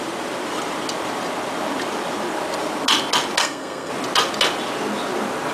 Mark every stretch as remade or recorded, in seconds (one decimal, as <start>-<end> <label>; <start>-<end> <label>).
0.0-3.4 recorded; 3.4-3.9 remade; 3.9-5.5 recorded